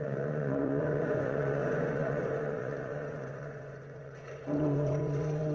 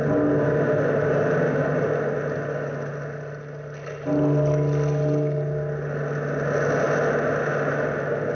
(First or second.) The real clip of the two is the second